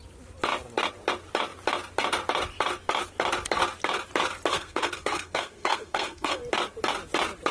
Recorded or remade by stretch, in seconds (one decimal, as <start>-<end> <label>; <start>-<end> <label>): 0.0-4.5 recorded; 4.5-6.4 remade; 6.4-7.5 recorded

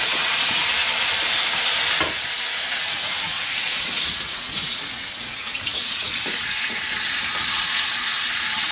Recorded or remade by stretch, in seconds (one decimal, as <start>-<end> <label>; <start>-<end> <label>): 0.0-0.6 remade; 0.6-2.5 recorded; 2.5-8.7 remade

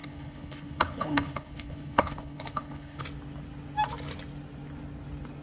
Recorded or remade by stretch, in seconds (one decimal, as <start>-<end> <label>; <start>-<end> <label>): 0.0-3.0 remade; 3.0-5.4 recorded

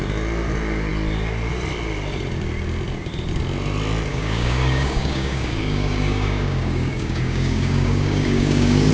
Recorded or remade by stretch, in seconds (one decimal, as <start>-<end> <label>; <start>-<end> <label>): 0.0-4.1 recorded; 4.1-8.9 remade

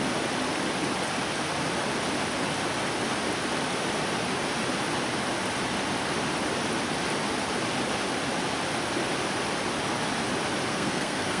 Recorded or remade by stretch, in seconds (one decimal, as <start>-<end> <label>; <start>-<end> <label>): 0.0-10.7 recorded; 10.7-11.4 remade

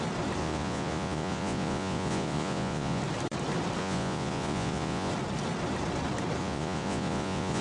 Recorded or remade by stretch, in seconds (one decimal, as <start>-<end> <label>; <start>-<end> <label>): 0.0-0.4 recorded; 0.4-3.0 remade; 3.0-3.8 recorded; 3.8-5.1 remade; 5.1-6.4 recorded; 6.4-7.6 remade

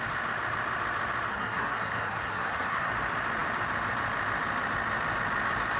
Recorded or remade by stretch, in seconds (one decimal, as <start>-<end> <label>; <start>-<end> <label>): 0.0-1.3 recorded; 1.3-2.9 remade; 2.9-5.8 recorded